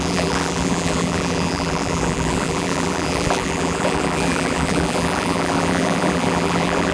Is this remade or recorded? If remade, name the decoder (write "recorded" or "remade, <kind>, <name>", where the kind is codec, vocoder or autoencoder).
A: remade, vocoder, BigVGAN v2